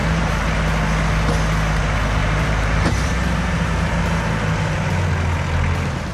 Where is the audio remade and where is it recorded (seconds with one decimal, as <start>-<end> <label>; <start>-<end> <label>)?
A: 0.0-0.5 remade; 0.5-2.2 recorded; 2.2-4.0 remade; 4.0-6.1 recorded